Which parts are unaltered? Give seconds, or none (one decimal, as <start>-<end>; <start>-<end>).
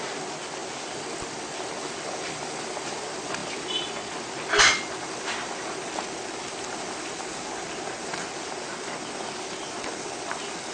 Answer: 0.0-10.7